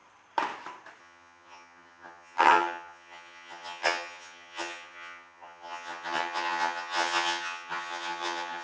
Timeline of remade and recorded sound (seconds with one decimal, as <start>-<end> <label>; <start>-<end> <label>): 0.0-1.0 recorded; 1.0-8.6 remade